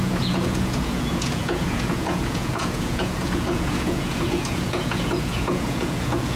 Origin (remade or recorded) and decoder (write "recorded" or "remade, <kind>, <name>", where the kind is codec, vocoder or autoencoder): remade, vocoder, Vocos